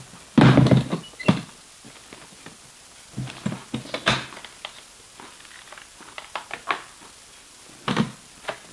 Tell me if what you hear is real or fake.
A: real